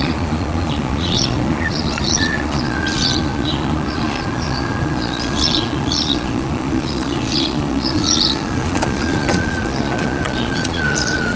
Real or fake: fake